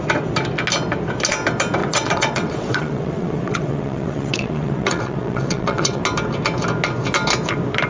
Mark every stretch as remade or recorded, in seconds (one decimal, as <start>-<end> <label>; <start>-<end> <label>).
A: 0.0-1.8 recorded; 1.8-6.0 remade; 6.0-7.9 recorded